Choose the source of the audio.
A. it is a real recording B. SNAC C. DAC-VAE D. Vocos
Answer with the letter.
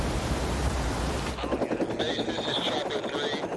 A